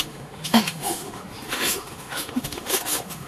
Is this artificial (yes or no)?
yes